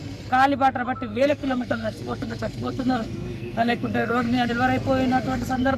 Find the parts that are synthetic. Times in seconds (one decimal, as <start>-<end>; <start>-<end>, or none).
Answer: 1.1-4.5; 5.1-5.8